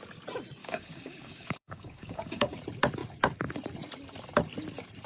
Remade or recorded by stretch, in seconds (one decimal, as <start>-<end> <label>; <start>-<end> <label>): 0.0-0.6 recorded; 0.6-2.6 remade; 2.6-5.1 recorded